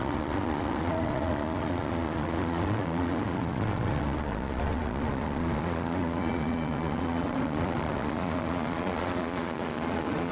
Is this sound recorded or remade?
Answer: remade